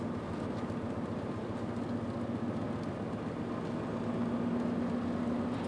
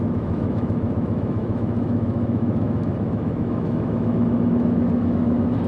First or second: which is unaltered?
first